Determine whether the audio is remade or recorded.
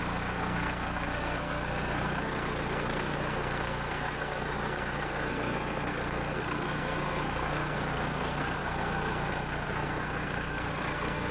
remade